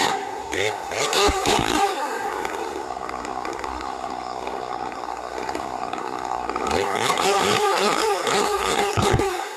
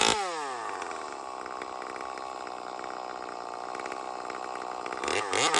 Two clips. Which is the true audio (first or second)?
second